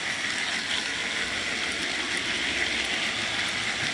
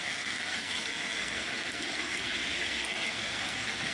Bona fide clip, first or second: first